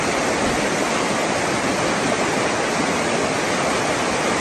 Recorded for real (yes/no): yes